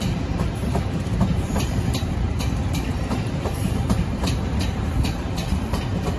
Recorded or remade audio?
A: remade